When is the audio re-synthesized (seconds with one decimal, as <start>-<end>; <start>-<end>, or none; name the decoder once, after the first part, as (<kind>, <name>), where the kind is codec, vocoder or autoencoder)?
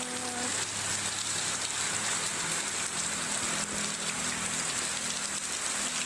none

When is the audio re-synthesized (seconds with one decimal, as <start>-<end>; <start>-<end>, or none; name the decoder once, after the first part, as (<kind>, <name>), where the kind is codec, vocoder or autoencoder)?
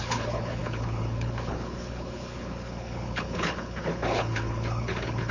0.0-5.3 (codec, HILCodec)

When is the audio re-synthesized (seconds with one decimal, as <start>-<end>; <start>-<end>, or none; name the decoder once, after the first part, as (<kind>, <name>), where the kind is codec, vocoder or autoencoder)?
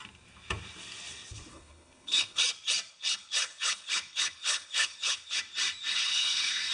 1.5-2.4 (codec, HILCodec); 2.9-5.4; 5.9-6.7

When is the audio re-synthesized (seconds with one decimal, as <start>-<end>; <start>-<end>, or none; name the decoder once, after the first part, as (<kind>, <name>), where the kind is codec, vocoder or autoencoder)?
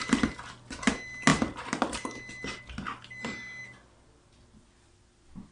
none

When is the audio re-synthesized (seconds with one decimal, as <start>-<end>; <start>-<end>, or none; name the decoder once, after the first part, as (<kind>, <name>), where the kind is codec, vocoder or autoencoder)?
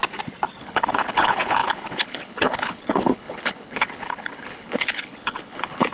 0.6-5.9 (codec, HILCodec)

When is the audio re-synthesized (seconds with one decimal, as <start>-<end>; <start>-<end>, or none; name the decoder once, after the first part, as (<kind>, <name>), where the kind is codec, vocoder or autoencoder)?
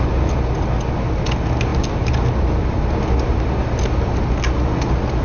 none